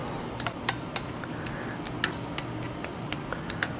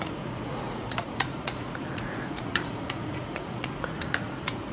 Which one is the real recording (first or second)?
first